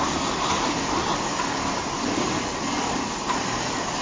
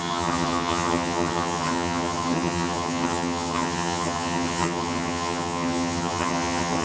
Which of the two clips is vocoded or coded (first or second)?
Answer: second